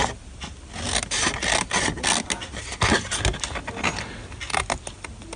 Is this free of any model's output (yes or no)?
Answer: yes